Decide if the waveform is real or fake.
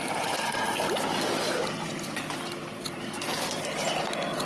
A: real